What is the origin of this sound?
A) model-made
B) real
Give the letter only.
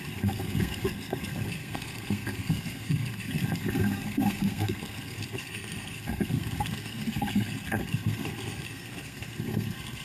A